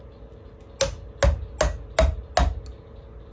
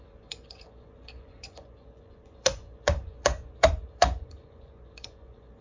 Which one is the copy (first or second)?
second